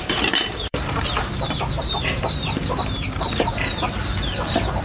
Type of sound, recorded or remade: remade